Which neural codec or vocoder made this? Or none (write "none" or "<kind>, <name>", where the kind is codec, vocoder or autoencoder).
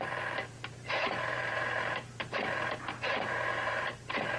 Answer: vocoder, BigVGAN v2